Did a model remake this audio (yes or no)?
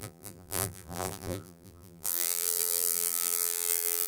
yes